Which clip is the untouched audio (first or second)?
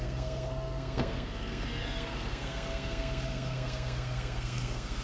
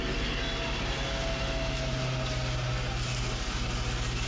second